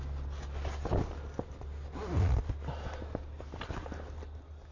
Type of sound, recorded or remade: recorded